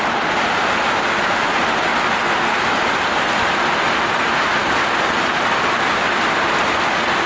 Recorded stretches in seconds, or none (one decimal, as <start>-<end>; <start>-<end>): 0.0-7.3